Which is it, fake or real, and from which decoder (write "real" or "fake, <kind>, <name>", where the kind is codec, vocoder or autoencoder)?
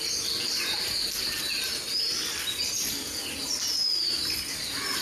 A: real